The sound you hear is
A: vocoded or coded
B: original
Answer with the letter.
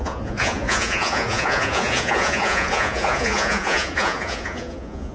A